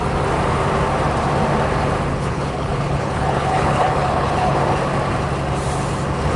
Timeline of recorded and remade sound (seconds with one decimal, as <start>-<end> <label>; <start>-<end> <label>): 0.0-2.1 recorded; 2.1-4.6 remade; 4.6-6.4 recorded

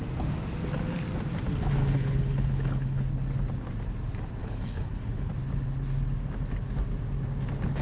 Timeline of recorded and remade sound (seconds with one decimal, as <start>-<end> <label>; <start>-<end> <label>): 0.0-1.8 recorded; 1.8-3.0 remade; 3.0-4.4 recorded; 4.4-5.3 remade; 5.3-7.8 recorded

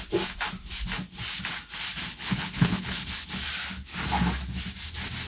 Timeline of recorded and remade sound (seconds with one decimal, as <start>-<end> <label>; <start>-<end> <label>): 0.0-2.1 recorded; 2.1-3.3 remade; 3.3-5.3 recorded

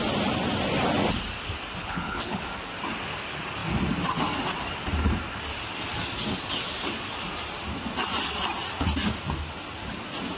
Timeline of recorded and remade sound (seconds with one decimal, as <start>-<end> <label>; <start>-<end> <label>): 0.0-1.8 recorded; 1.8-2.4 remade; 2.4-10.4 recorded

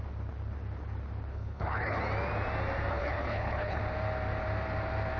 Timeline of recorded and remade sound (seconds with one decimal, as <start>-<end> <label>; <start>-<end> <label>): 0.0-1.3 recorded; 1.3-2.0 remade; 2.0-2.9 recorded; 2.9-3.8 remade; 3.8-5.2 recorded